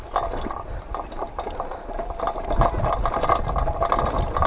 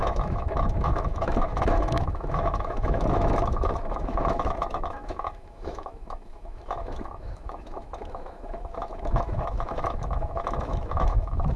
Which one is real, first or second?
first